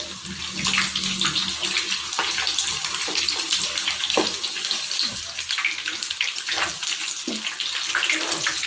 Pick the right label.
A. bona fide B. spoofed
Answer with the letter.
A